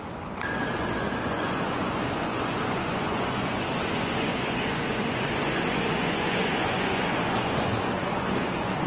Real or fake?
fake